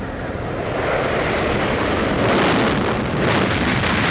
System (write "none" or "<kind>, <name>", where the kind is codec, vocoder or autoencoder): none